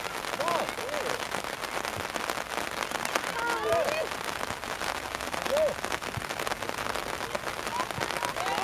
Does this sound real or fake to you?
real